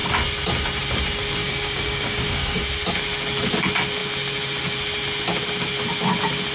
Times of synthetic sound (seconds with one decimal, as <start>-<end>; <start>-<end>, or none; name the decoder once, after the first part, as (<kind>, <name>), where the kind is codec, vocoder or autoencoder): 1.4-2.6 (codec, DAC)